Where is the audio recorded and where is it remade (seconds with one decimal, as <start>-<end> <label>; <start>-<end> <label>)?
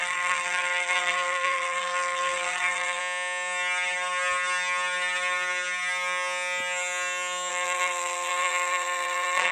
0.0-3.0 remade; 3.0-7.5 recorded; 7.5-9.5 remade